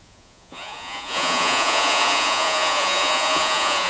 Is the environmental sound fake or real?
fake